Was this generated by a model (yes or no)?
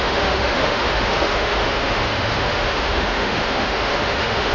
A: yes